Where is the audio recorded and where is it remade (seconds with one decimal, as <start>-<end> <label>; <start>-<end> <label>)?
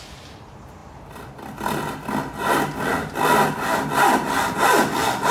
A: 0.0-5.3 recorded